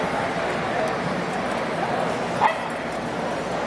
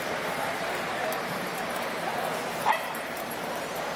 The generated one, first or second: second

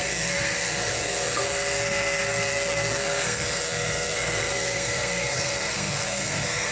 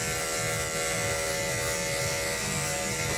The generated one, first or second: first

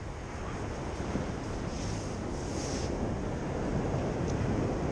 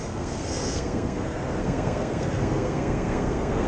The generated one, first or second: second